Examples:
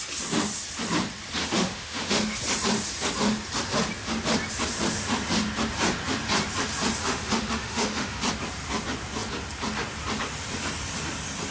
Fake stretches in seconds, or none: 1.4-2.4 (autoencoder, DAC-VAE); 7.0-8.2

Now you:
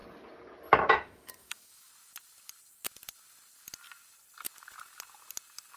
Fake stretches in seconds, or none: 0.9-1.9 (autoencoder, DAC-VAE)

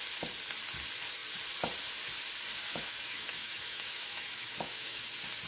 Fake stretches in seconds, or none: 2.6-5.0 (autoencoder, DAC-VAE)

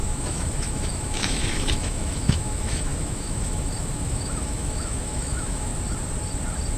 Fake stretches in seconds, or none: 0.0-5.7 (autoencoder, DAC-VAE)

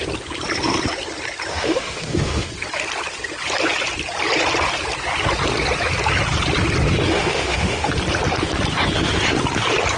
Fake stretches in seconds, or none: 1.5-2.5 (autoencoder, DAC-VAE); 7.1-7.9

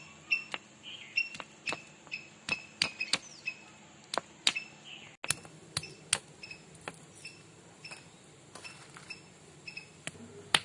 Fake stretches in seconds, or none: none

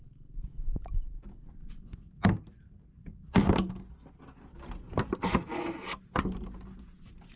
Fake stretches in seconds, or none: none